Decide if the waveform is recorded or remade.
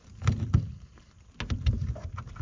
recorded